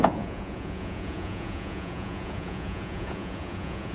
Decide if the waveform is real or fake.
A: fake